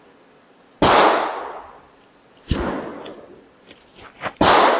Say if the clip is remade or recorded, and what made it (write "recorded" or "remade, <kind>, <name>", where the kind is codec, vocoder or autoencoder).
recorded